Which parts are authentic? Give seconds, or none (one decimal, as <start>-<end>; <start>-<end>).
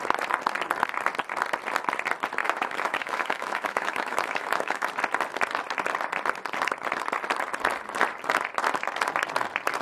0.0-2.4; 4.9-9.8